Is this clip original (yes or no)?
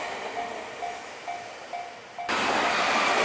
yes